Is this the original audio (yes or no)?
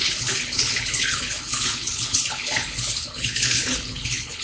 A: no